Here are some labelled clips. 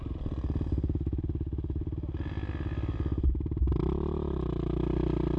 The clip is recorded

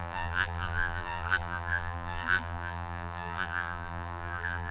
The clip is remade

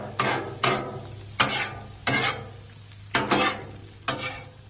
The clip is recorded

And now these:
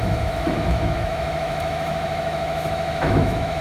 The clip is remade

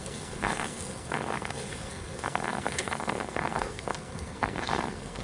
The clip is remade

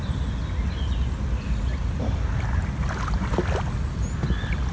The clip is recorded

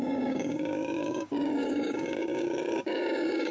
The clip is remade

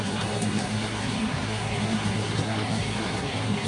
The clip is remade